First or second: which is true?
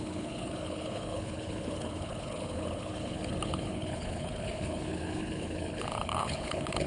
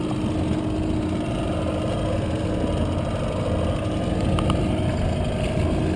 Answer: second